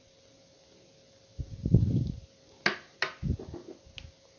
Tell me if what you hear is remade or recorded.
recorded